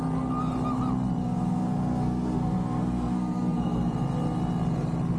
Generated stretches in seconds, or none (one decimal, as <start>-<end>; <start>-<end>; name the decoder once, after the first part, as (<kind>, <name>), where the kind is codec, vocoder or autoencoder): 1.2-3.9 (codec, SNAC)